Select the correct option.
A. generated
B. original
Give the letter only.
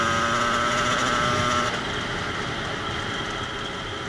B